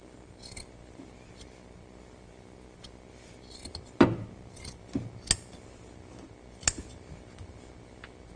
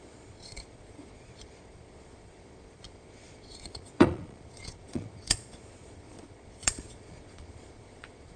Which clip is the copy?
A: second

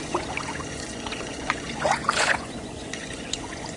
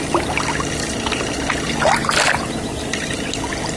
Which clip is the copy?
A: first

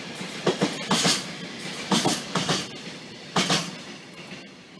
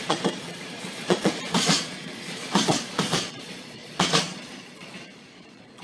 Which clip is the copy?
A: second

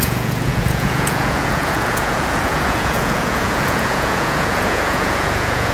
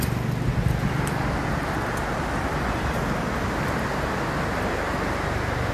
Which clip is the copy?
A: first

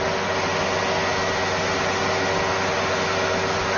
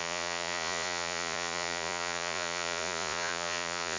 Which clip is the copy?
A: second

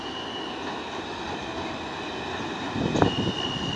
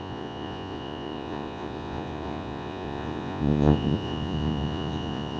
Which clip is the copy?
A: second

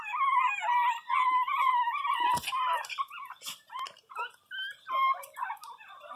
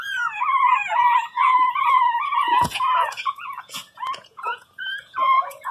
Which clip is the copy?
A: second